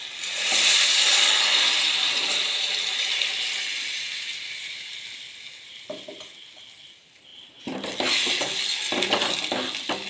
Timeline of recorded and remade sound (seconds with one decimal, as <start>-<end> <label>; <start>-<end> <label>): 0.0-10.1 recorded